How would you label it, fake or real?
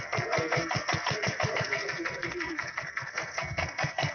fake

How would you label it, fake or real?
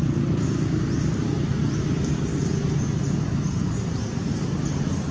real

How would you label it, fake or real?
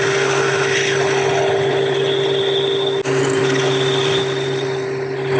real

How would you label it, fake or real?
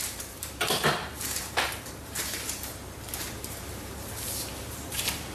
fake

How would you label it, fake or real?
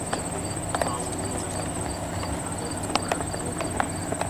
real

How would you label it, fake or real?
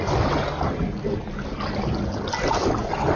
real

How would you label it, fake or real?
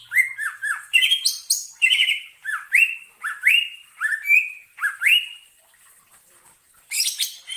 fake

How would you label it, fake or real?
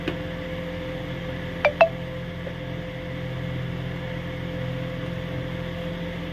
real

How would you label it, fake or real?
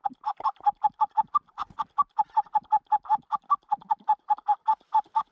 real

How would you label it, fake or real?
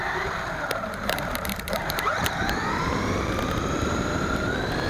fake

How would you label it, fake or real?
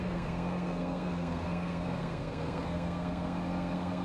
fake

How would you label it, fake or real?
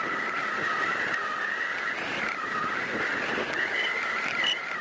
real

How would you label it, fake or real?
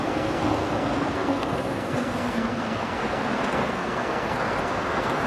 fake